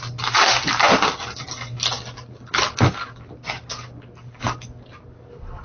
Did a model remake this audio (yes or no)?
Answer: no